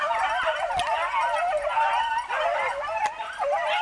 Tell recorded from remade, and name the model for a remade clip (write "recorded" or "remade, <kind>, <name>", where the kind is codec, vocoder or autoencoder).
recorded